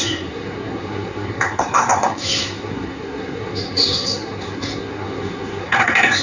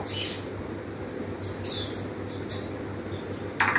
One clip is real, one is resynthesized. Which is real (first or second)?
second